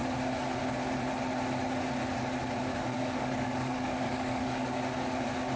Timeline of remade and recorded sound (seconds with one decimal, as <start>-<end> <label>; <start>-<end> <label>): 0.0-2.7 recorded; 2.7-4.8 remade; 4.8-5.6 recorded